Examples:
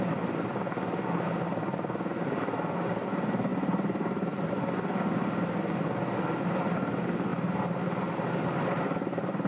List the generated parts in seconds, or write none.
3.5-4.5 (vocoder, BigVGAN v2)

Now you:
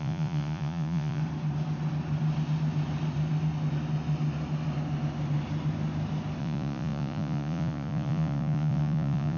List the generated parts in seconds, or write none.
0.0-1.2 (vocoder, Vocos); 6.4-9.4

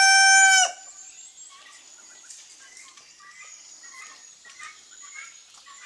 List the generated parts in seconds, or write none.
none